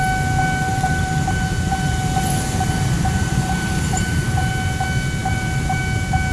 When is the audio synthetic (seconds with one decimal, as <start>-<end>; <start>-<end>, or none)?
0.7-4.5; 5.2-5.8